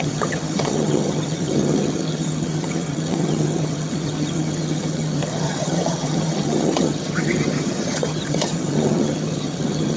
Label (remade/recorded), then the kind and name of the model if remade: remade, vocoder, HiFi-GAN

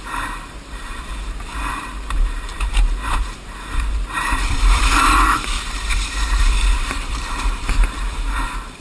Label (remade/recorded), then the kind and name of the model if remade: remade, vocoder, BigVGAN v2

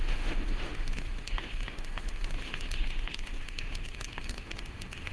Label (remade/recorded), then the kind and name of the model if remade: remade, autoencoder, DAC-VAE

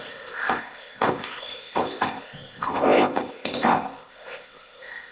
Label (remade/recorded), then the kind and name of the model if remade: remade, codec, ZipCodec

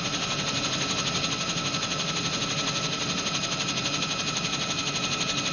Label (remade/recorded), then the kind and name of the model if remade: recorded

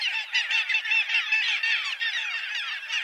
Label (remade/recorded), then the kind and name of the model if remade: recorded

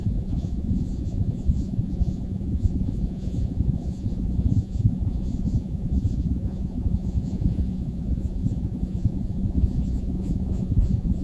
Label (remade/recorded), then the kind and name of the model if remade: remade, vocoder, Vocos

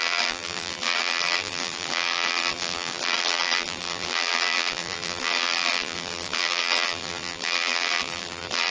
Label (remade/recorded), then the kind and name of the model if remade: remade, vocoder, BigVGAN v2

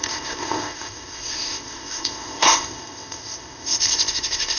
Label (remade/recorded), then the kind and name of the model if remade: remade, codec, ZipCodec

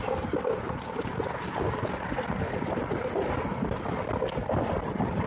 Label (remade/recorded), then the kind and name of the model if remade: recorded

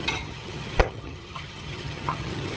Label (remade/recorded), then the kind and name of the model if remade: remade, vocoder, HiFi-GAN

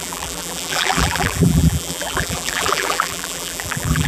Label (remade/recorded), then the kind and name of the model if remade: remade, vocoder, BigVGAN v2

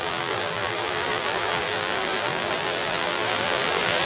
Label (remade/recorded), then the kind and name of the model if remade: remade, vocoder, BigVGAN v2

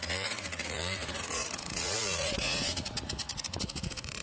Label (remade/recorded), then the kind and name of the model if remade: remade, vocoder, Vocos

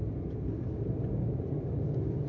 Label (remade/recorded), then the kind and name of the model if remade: recorded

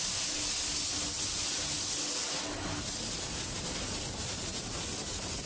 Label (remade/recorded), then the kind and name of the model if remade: recorded